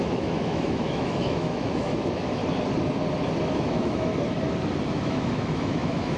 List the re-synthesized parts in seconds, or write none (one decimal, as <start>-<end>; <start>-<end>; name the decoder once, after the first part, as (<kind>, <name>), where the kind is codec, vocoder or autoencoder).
0.0-2.4 (autoencoder, DAC-VAE); 3.5-4.1; 4.9-6.2